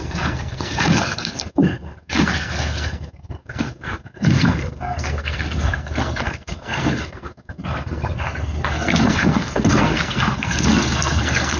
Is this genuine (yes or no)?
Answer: no